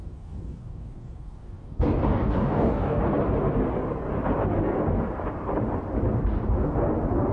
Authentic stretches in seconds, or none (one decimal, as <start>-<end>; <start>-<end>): 3.0-7.3